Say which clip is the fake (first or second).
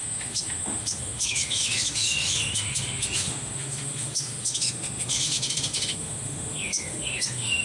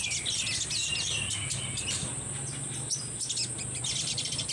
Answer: first